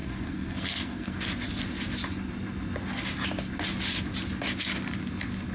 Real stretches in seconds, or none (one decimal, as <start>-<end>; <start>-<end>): 1.3-5.5